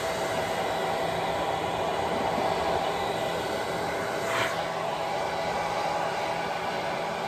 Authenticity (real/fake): real